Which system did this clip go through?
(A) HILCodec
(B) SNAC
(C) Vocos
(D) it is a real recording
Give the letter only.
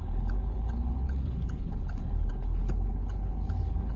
A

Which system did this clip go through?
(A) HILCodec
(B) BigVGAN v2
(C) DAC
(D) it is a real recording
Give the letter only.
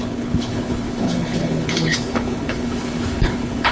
A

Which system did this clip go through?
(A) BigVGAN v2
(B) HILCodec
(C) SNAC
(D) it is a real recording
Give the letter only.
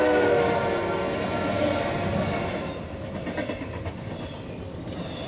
D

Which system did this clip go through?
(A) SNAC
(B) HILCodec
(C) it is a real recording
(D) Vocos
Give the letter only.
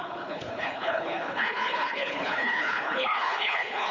B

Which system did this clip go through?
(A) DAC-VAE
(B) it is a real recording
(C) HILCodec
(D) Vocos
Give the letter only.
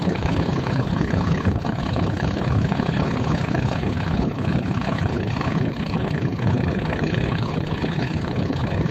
C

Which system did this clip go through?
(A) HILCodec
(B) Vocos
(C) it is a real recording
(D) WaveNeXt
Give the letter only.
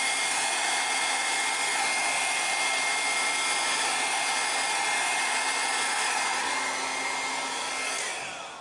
C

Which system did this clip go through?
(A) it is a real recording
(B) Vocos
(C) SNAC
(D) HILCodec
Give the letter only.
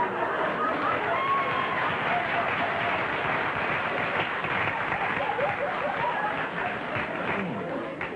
A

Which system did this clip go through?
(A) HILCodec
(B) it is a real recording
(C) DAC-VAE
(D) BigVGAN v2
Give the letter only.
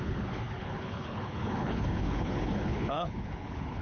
A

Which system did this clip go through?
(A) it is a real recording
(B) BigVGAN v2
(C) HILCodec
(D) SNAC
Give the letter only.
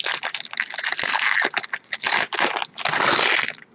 A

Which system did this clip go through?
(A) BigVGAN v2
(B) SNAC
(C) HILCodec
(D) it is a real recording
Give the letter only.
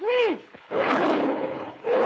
C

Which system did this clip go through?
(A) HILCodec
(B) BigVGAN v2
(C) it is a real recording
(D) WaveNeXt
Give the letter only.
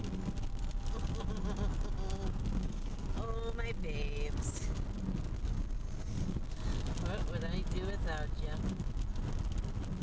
C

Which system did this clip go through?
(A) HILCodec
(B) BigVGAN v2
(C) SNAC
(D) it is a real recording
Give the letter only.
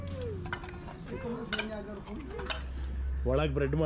D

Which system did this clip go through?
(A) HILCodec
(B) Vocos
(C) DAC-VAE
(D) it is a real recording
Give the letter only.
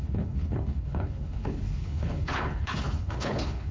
A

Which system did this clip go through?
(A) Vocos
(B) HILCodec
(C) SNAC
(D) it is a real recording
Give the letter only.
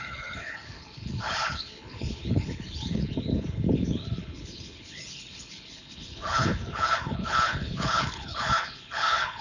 B